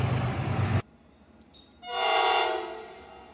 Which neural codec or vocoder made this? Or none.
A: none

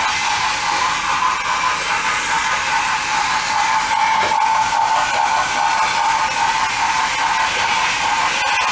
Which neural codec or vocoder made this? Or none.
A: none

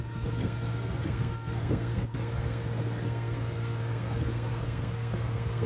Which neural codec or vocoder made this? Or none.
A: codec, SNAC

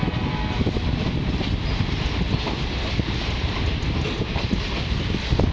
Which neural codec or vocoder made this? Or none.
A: none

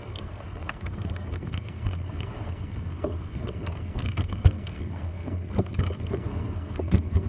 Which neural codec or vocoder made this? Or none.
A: codec, SNAC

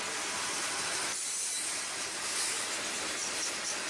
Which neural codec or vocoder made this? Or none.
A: none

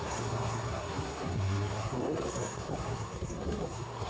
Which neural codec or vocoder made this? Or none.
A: codec, SNAC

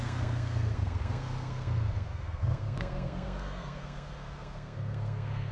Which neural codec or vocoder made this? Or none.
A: codec, SNAC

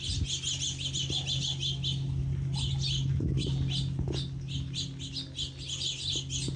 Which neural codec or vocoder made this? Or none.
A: none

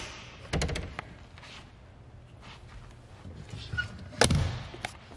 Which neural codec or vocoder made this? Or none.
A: none